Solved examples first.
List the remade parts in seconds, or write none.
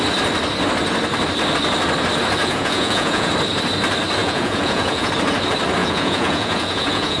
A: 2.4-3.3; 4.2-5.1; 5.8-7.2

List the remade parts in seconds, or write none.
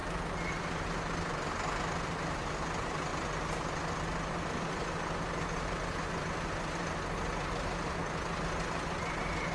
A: none